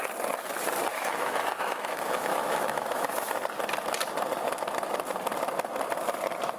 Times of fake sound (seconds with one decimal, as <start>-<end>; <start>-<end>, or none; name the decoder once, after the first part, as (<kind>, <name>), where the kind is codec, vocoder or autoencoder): 0.9-3.3 (autoencoder, DAC-VAE)